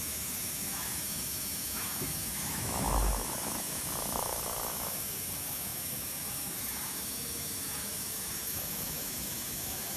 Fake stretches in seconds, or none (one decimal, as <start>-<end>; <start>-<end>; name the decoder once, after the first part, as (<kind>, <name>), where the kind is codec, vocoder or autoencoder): 0.0-10.0 (autoencoder, DAC-VAE)